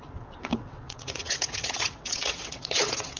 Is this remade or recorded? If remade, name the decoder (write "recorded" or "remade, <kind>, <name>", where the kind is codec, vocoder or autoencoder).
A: remade, vocoder, WaveNeXt